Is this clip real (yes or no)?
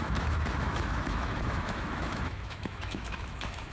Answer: no